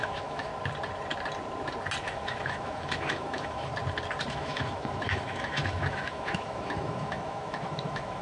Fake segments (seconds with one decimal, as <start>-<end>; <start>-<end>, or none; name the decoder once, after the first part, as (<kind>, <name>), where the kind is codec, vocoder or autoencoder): 0.0-0.5 (autoencoder, DAC-VAE); 2.0-3.7; 4.3-8.2